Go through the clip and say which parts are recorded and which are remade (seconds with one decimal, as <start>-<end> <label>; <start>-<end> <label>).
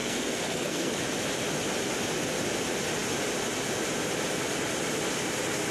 0.0-1.0 remade; 1.0-5.7 recorded